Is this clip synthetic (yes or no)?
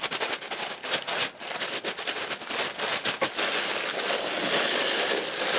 no